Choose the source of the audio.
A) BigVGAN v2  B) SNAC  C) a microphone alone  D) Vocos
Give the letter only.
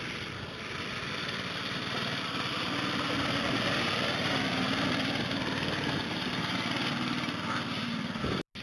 C